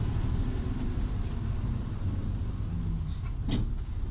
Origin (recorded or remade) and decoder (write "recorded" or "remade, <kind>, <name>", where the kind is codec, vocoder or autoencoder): recorded